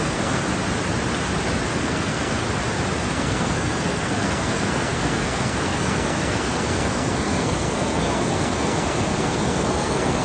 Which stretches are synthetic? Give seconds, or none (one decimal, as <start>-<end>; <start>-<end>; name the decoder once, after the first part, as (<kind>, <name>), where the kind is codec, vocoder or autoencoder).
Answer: 0.0-0.5 (codec, SNAC); 1.8-2.4; 3.1-10.2